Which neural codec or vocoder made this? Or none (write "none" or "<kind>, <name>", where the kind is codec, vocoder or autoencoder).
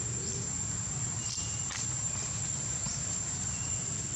vocoder, BigVGAN v2